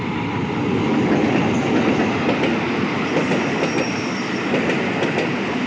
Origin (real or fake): real